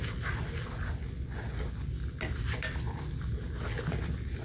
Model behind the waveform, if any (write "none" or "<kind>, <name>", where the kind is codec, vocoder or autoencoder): none